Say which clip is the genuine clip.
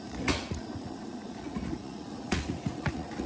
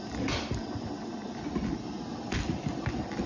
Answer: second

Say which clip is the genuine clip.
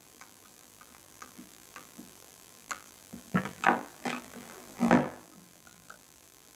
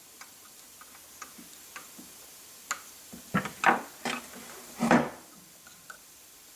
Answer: second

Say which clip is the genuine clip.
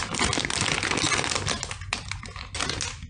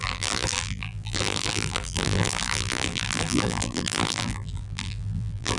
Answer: first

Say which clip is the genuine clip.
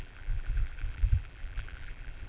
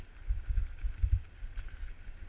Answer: second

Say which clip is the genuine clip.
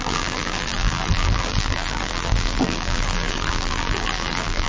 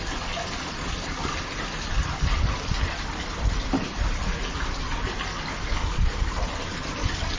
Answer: second